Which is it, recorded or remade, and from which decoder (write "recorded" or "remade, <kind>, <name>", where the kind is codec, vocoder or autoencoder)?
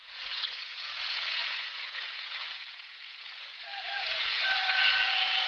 remade, vocoder, Vocos